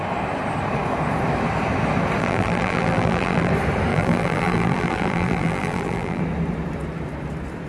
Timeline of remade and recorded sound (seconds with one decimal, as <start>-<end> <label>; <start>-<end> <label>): 0.0-2.2 recorded; 2.2-3.5 remade; 3.5-3.9 recorded; 3.9-6.2 remade; 6.2-7.7 recorded